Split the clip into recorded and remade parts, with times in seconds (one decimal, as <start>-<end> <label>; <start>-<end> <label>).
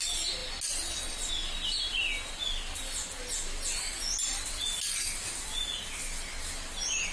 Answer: 0.0-7.1 recorded